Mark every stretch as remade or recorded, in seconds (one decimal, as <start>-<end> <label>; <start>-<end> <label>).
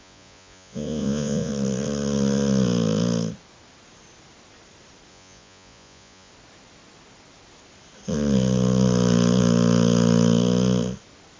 0.0-1.5 remade; 1.5-5.1 recorded; 5.1-6.3 remade; 6.3-11.4 recorded